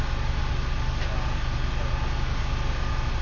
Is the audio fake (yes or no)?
no